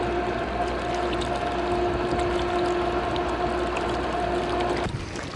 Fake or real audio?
real